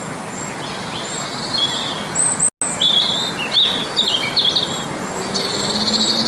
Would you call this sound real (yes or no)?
yes